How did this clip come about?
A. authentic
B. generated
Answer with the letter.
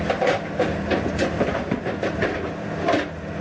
A